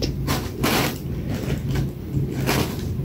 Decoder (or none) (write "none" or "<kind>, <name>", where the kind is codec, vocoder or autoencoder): none